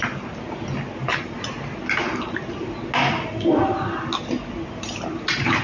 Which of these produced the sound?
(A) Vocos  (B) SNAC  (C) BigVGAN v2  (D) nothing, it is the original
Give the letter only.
D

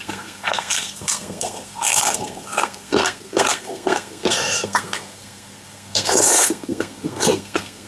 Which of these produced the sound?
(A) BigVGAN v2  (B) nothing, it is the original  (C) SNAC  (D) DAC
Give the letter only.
C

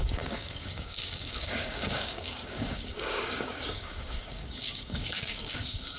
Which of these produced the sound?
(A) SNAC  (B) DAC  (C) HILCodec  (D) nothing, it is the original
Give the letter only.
B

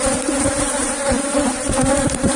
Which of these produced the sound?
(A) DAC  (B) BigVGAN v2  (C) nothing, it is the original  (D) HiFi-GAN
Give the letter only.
B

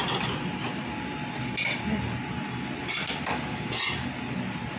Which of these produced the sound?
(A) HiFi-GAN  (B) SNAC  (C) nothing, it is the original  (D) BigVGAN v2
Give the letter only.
C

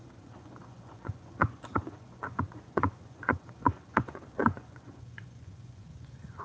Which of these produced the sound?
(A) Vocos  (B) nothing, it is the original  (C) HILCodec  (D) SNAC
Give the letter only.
A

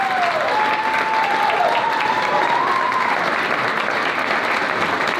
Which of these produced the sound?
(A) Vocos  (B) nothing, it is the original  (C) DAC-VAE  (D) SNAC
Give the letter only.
B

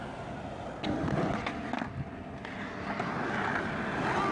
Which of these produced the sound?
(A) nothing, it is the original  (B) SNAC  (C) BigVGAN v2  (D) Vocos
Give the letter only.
A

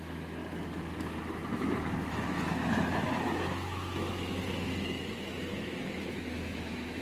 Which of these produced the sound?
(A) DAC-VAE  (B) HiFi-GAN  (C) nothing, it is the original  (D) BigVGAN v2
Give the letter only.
A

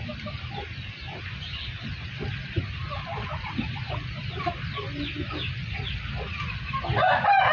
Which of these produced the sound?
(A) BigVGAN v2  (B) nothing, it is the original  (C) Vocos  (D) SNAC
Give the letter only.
B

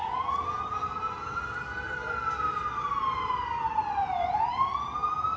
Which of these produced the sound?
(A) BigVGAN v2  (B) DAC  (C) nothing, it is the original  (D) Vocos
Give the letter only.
C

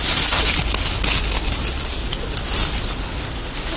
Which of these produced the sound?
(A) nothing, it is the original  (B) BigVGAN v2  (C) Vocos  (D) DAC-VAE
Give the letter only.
A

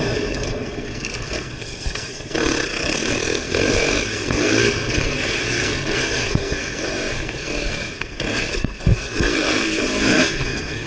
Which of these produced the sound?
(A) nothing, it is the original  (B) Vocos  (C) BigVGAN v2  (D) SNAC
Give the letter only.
D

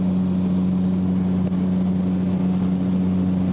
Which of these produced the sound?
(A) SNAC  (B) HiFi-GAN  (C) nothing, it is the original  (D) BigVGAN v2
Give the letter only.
C